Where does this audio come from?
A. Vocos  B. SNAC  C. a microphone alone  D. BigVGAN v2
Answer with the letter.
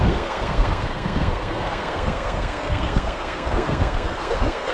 B